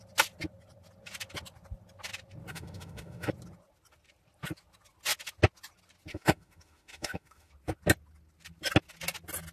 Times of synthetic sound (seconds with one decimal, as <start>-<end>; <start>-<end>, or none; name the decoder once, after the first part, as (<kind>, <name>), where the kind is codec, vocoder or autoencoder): 2.5-3.3 (autoencoder, DAC-VAE); 6.1-7.5